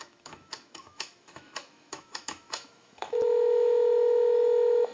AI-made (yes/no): yes